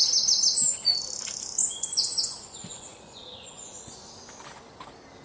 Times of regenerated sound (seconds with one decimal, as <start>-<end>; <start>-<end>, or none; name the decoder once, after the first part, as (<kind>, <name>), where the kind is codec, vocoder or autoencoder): 1.6-4.1 (vocoder, Vocos)